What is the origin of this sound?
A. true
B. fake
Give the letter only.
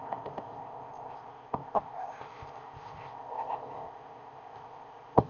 B